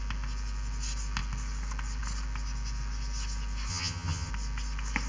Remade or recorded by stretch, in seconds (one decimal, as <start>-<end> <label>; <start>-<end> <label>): 0.0-3.7 recorded; 3.7-4.3 remade; 4.3-5.1 recorded